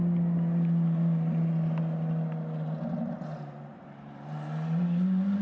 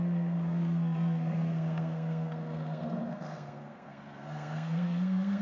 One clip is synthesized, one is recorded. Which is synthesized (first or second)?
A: second